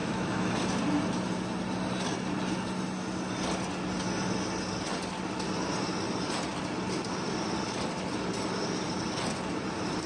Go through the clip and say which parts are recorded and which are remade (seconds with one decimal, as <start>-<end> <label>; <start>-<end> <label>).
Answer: 0.0-0.5 remade; 0.5-10.1 recorded